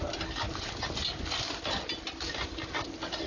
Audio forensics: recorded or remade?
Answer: recorded